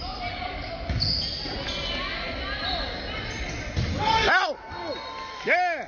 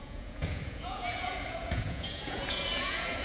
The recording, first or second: first